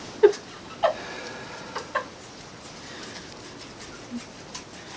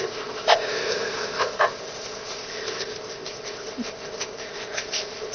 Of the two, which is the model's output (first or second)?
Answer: second